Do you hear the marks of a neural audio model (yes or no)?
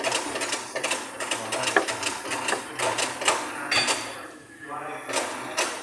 no